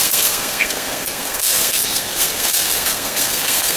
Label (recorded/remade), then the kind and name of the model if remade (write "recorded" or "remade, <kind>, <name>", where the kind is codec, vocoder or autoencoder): remade, codec, SNAC